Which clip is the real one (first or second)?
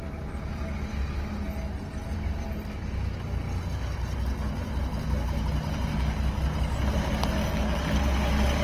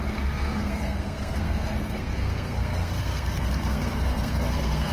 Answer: first